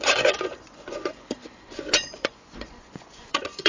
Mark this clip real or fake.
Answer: fake